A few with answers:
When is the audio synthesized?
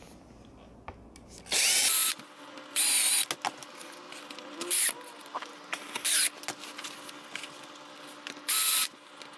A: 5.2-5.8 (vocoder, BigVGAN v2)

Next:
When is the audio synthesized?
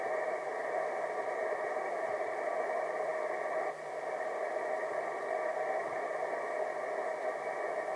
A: none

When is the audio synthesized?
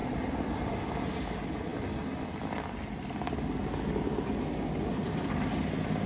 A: 0.0-1.0 (vocoder, BigVGAN v2)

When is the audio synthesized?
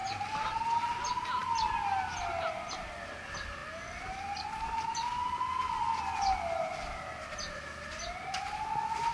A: none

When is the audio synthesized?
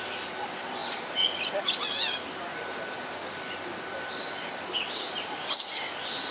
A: 0.0-2.5 (vocoder, BigVGAN v2); 3.3-6.3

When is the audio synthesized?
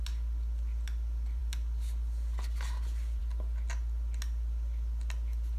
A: none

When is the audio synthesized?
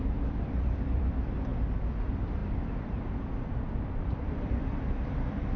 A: 0.0-1.5 (vocoder, BigVGAN v2); 2.0-2.4; 3.8-5.6